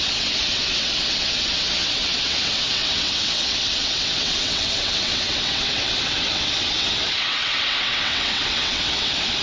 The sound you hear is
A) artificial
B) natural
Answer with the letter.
A